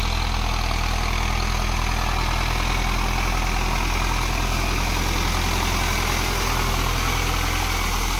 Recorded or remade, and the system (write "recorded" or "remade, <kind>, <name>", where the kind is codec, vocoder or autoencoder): recorded